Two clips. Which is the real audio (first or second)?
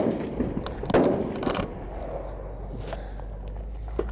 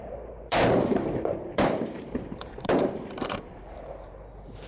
first